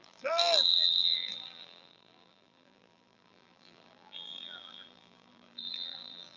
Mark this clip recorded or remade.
remade